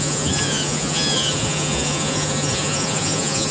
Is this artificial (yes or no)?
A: yes